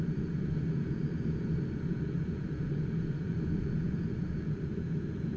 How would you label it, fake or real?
fake